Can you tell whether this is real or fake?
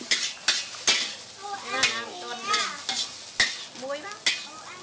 real